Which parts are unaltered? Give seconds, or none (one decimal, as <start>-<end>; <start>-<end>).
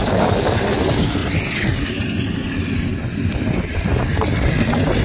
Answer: 0.0-5.0